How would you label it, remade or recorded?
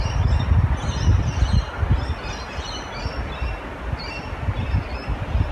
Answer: recorded